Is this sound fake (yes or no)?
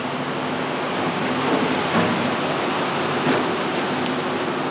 no